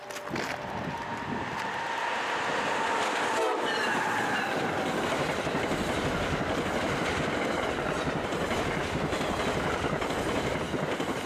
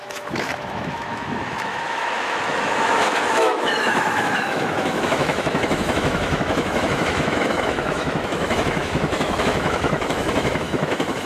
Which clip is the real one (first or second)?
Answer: first